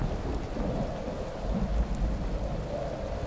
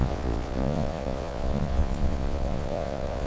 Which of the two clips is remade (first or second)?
second